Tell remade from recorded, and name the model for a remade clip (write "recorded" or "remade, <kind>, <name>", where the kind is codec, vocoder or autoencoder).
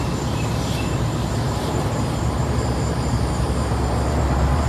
remade, vocoder, BigVGAN v2